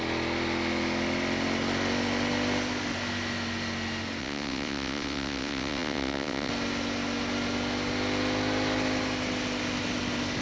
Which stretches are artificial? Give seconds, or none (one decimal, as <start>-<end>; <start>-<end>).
4.2-6.5